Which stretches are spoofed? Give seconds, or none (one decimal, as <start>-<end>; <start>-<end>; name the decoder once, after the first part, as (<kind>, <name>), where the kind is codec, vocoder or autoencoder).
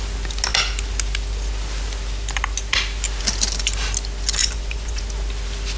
4.4-5.0 (vocoder, Vocos)